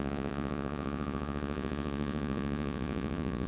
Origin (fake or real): fake